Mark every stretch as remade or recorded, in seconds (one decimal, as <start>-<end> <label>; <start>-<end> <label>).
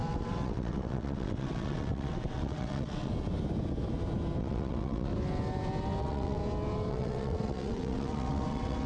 0.0-3.1 remade; 3.1-4.4 recorded; 4.4-5.1 remade; 5.1-6.0 recorded; 6.0-6.4 remade; 6.4-6.9 recorded; 6.9-8.9 remade